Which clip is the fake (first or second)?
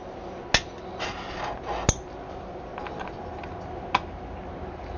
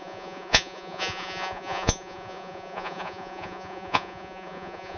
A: second